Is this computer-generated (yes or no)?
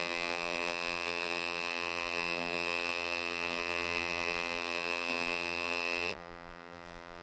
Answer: yes